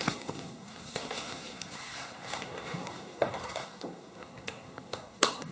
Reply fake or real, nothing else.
fake